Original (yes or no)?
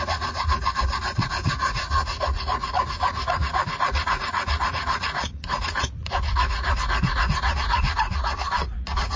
no